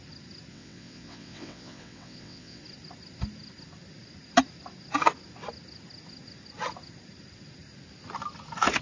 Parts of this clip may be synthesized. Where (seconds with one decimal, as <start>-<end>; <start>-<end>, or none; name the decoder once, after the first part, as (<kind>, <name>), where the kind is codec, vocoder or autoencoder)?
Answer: 0.5-2.6 (vocoder, WaveNeXt)